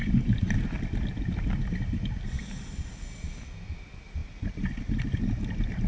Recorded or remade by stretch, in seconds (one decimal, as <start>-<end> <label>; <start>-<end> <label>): 0.0-5.9 recorded